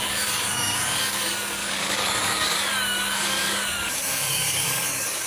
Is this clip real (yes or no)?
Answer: no